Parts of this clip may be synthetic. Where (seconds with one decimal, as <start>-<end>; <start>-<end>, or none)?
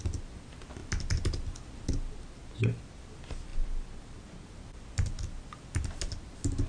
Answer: none